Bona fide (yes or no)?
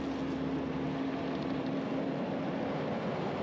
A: yes